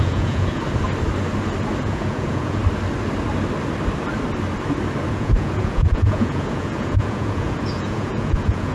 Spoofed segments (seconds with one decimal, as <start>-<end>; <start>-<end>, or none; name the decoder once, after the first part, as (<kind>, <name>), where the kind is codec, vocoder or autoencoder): 0.0-0.6 (vocoder, Vocos); 1.8-2.6; 5.1-8.7